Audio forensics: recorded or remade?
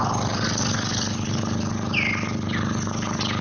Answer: recorded